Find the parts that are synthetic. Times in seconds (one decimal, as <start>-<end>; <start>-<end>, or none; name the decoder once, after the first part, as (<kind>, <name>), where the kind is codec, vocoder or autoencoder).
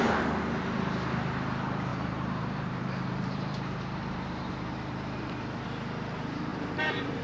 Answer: 1.9-4.5 (vocoder, BigVGAN v2); 6.5-7.2